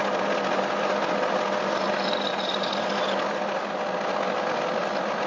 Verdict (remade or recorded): recorded